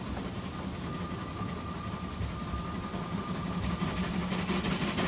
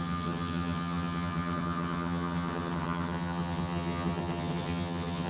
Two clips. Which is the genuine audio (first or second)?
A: first